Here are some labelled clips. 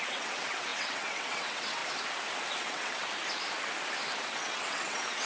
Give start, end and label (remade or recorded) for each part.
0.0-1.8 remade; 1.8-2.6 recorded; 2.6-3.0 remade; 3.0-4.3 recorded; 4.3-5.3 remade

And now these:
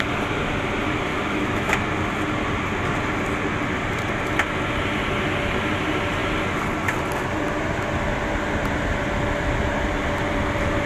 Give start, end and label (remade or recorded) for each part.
0.0-1.1 recorded; 1.1-1.8 remade; 1.8-10.9 recorded

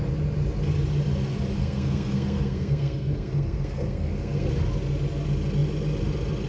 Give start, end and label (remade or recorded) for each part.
0.0-1.6 recorded; 1.6-4.5 remade; 4.5-6.5 recorded

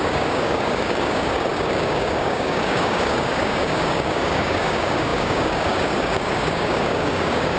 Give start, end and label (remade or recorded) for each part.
0.0-7.6 remade